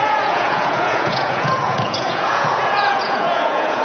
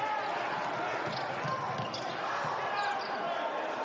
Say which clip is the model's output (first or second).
first